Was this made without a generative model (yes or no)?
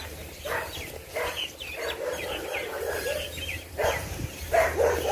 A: no